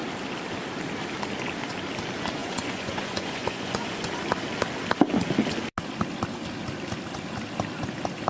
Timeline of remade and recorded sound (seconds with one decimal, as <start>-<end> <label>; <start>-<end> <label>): 0.0-2.4 recorded; 2.4-4.1 remade; 4.1-8.3 recorded